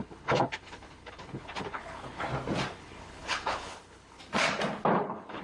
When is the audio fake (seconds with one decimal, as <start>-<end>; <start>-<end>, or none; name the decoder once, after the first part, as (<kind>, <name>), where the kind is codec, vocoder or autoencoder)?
0.0-2.2 (codec, HILCodec); 2.7-4.2; 4.9-5.4